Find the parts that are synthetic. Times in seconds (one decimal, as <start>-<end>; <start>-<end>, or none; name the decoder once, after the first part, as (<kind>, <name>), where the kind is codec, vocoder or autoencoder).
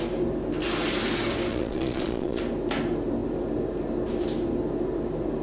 1.5-2.4 (vocoder, Vocos)